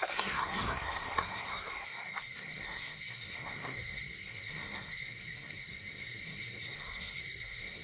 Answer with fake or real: fake